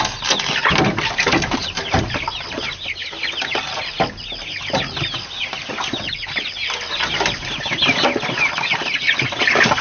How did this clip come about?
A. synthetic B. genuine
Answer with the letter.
B